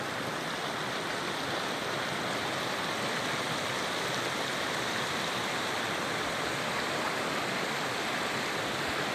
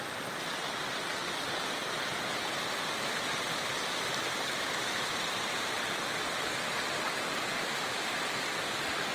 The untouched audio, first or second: first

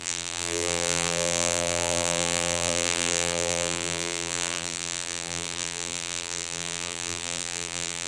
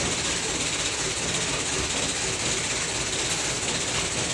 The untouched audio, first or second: second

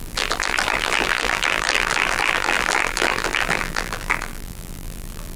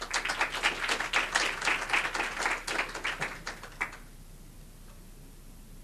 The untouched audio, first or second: second